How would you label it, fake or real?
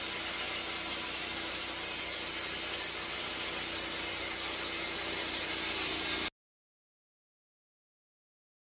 real